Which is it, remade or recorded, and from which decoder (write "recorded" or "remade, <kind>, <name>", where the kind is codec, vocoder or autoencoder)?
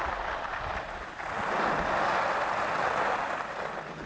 recorded